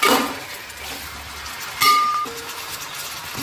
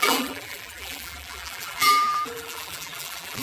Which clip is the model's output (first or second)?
second